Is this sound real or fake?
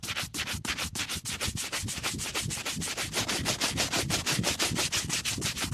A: fake